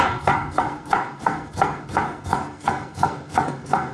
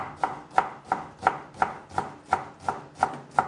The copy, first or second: first